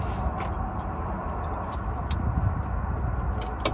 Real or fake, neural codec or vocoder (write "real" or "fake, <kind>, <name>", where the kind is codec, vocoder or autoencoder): real